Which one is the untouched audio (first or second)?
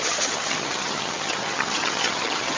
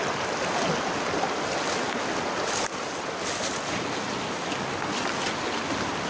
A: second